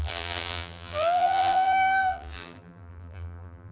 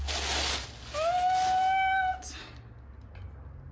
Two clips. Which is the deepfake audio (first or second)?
first